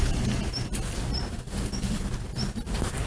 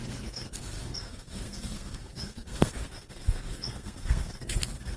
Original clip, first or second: first